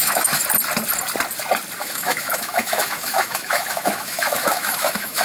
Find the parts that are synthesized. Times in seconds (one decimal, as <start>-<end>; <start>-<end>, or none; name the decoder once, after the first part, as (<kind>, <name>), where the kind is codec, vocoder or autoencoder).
0.0-0.4 (autoencoder, DAC-VAE); 1.8-5.2